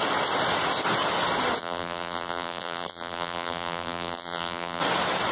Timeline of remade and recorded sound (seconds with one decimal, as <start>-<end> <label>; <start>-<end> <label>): 0.0-1.6 recorded; 1.6-4.8 remade; 4.8-5.3 recorded